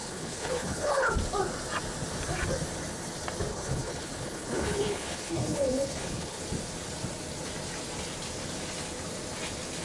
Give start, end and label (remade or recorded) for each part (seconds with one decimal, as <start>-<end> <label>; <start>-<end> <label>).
0.0-1.1 remade; 1.1-3.5 recorded; 3.5-6.4 remade; 6.4-9.8 recorded